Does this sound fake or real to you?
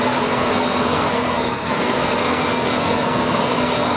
fake